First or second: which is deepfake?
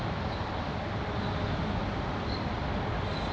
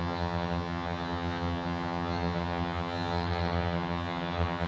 second